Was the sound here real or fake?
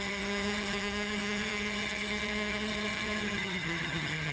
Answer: fake